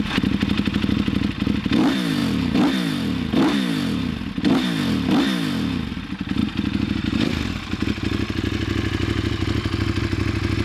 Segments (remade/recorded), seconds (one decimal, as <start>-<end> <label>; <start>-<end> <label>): 0.0-6.4 recorded; 6.4-7.2 remade; 7.2-10.6 recorded